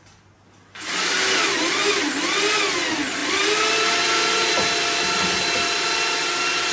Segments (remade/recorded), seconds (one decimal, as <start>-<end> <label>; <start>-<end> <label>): 0.0-3.2 recorded; 3.2-4.6 remade; 4.6-6.7 recorded

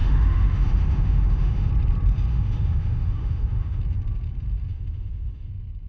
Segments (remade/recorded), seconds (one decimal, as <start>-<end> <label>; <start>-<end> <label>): 0.0-1.7 remade; 1.7-2.3 recorded; 2.3-3.8 remade; 3.8-4.7 recorded; 4.7-5.5 remade; 5.5-5.9 recorded

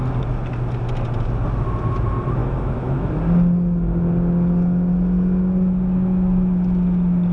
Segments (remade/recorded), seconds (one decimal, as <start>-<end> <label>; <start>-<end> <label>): 0.0-2.4 recorded; 2.4-3.1 remade; 3.1-7.3 recorded

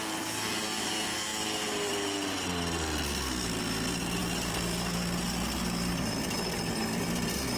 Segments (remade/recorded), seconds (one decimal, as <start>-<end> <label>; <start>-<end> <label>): 0.0-7.6 recorded

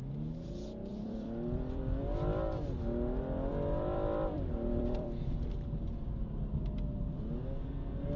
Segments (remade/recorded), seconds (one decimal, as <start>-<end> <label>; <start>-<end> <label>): 0.0-0.9 recorded; 0.9-2.0 remade; 2.0-3.5 recorded; 3.5-5.3 remade; 5.3-8.2 recorded

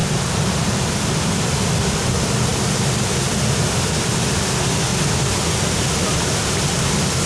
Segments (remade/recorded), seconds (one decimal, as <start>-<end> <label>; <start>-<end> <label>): 0.0-7.3 recorded

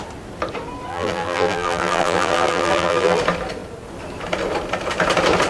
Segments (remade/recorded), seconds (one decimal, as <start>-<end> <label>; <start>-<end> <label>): 0.0-0.9 recorded; 0.9-3.2 remade; 3.2-5.5 recorded